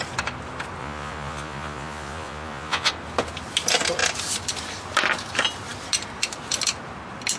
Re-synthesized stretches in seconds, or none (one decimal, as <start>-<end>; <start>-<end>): 0.8-2.9